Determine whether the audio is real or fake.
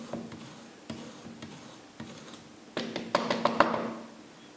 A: real